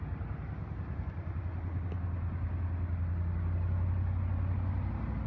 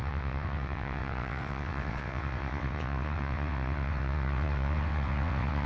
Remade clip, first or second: second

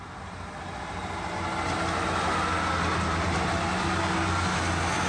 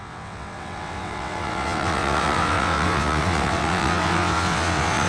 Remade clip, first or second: second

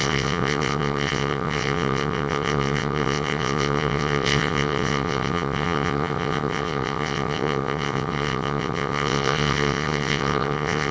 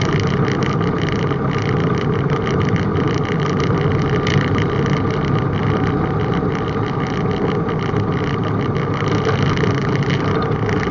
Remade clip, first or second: first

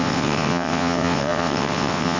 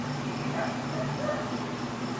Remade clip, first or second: first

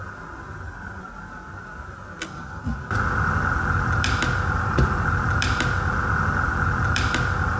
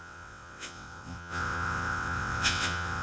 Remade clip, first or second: second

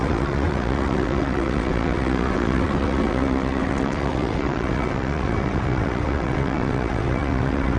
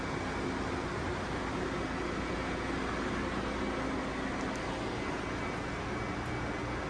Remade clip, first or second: first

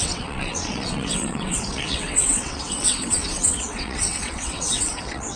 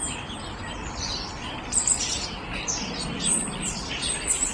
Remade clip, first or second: first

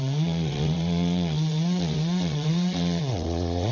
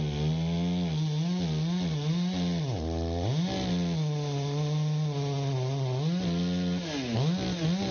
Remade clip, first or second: first